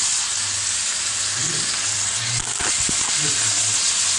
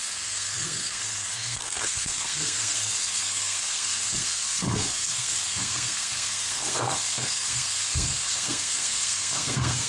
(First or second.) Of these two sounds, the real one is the first